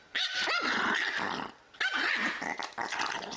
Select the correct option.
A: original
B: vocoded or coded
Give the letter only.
A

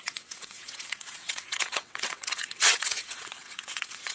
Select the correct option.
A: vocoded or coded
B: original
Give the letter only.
A